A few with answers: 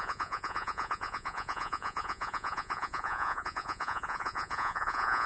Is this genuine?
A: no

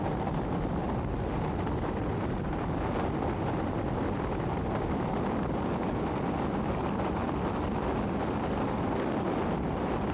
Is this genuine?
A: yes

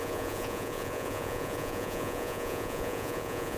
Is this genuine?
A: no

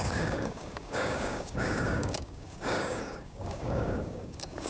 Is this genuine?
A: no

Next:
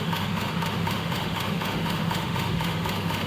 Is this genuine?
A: no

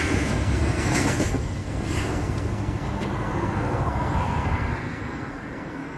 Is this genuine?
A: no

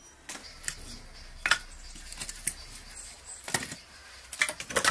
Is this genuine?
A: yes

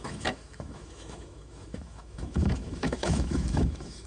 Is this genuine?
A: no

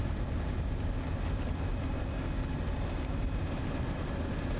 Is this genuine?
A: yes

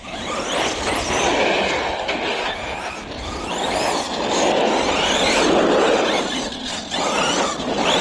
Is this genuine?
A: yes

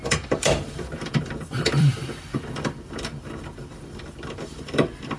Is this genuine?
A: no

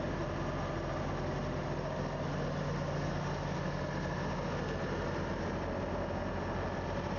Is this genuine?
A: yes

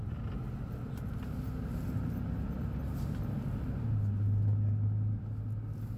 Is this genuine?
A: yes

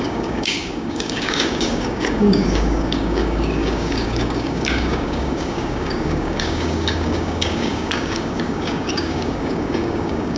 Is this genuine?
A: no